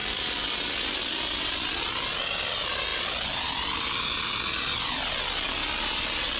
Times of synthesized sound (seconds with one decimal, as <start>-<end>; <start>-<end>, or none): 2.9-4.2

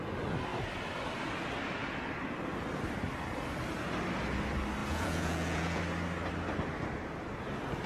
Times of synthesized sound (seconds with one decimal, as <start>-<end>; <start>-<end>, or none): 4.8-5.8

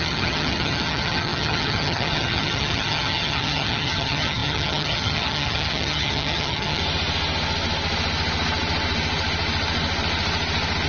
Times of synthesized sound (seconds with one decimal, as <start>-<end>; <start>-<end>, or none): 0.0-6.8

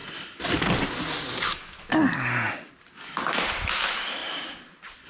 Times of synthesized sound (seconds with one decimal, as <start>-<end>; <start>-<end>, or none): 3.1-5.1

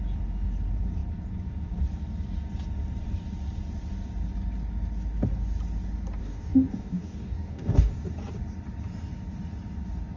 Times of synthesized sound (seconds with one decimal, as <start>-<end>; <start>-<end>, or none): 6.2-7.9